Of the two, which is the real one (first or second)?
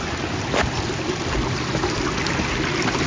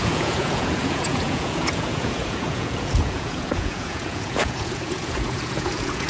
first